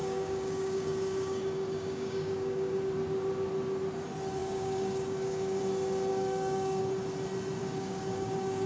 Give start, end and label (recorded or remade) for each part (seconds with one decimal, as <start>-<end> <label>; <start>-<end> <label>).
0.0-2.8 remade; 2.8-4.4 recorded; 4.4-5.6 remade; 5.6-6.1 recorded; 6.1-6.8 remade; 6.8-7.6 recorded; 7.6-8.7 remade